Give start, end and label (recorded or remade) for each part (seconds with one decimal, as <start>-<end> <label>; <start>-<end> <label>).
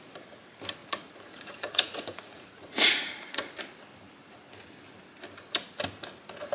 0.0-0.8 recorded; 0.8-3.6 remade; 3.6-6.5 recorded